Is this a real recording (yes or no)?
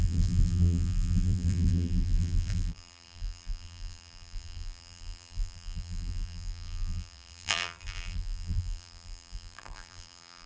no